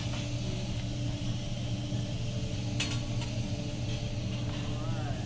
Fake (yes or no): no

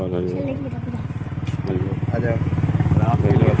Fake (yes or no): no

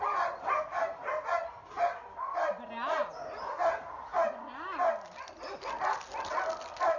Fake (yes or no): no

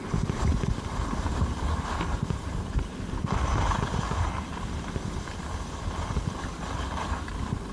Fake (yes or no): no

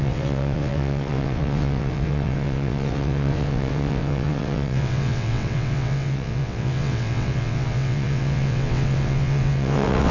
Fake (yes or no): yes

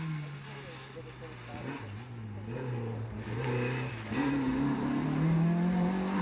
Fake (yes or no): no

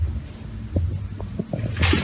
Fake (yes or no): no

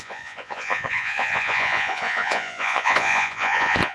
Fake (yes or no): yes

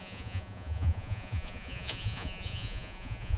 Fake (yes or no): yes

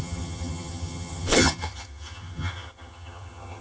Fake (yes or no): yes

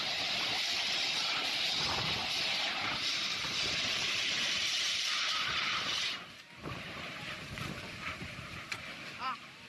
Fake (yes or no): yes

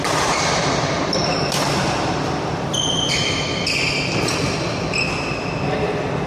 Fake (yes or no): no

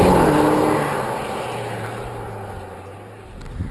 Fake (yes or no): no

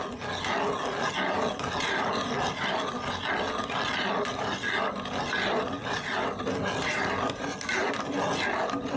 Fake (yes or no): no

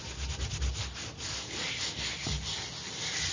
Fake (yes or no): no